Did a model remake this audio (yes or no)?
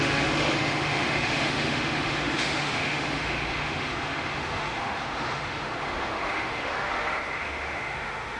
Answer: yes